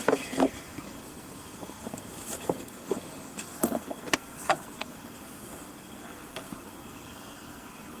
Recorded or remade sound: remade